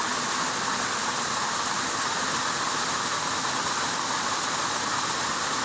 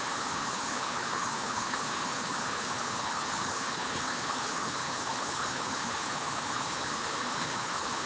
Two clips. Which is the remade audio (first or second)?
second